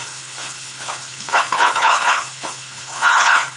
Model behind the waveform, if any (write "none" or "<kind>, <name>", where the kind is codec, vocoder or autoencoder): codec, HILCodec